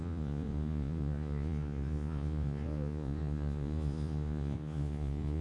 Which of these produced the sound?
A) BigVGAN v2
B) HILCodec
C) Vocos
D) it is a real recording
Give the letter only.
C